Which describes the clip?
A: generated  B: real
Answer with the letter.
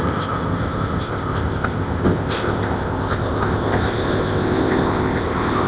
A